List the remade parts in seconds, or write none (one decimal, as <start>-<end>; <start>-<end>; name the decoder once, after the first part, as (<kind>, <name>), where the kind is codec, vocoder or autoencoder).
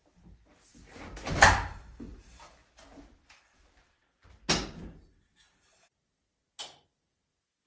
none